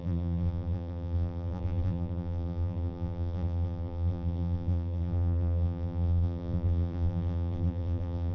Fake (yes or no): yes